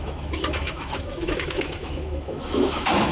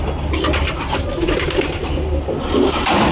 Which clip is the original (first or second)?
second